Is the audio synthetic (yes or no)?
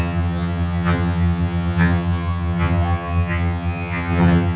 yes